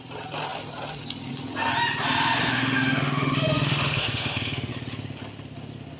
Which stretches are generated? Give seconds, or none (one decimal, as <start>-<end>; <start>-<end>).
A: 2.4-4.7